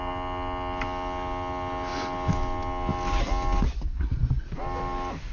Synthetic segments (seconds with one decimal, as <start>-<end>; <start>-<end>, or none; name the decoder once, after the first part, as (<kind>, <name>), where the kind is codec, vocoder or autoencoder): none